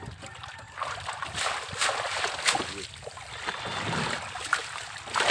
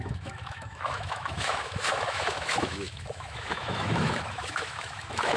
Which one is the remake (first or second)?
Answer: second